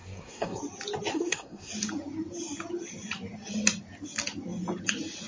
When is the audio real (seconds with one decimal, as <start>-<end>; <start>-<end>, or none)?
0.6-1.1; 1.7-5.3